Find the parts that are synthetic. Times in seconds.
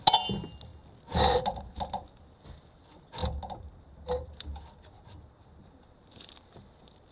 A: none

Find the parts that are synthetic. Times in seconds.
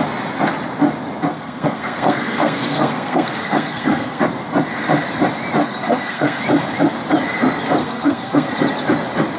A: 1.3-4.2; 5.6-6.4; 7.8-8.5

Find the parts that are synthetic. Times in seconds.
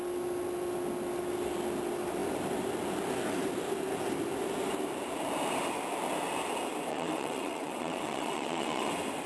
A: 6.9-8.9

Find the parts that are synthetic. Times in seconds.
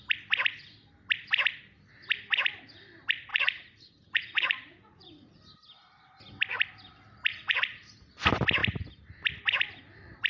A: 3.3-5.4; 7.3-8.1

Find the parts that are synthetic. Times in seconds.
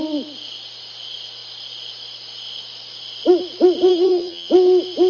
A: 3.9-4.5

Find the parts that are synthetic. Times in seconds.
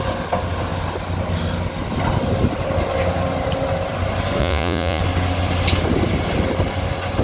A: 4.4-5.0